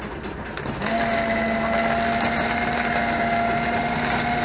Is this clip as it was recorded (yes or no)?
yes